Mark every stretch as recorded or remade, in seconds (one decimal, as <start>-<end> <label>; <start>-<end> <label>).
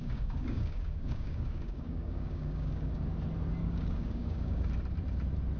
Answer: 0.0-2.9 remade; 2.9-3.6 recorded; 3.6-4.7 remade; 4.7-5.6 recorded